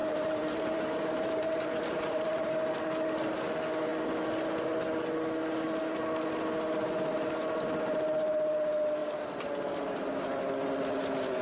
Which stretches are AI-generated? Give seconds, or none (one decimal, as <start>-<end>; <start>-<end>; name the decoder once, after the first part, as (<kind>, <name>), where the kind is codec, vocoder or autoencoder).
0.0-2.5 (vocoder, BigVGAN v2)

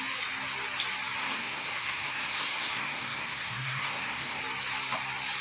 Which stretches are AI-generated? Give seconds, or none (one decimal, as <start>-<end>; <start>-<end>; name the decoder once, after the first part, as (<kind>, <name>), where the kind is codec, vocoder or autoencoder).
1.2-4.4 (codec, SNAC)